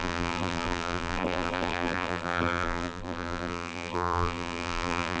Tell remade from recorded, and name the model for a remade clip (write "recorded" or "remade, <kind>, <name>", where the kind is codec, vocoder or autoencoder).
remade, vocoder, BigVGAN v2